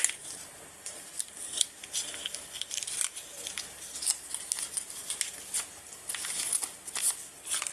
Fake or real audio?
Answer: real